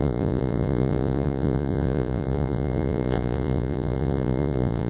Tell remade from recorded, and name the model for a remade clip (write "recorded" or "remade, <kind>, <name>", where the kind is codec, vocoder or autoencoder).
remade, vocoder, Vocos